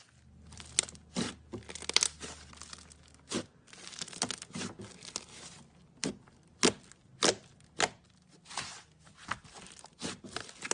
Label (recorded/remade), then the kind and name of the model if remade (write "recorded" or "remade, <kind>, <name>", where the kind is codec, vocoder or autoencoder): recorded